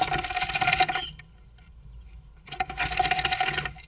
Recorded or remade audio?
recorded